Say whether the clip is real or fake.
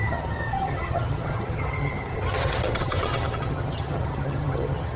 fake